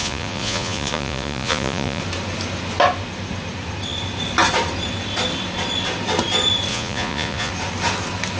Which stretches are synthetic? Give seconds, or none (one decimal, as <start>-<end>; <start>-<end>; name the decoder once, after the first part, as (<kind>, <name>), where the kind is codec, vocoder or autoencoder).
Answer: 0.0-2.0 (vocoder, Vocos); 6.7-7.5